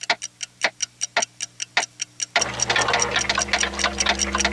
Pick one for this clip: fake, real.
real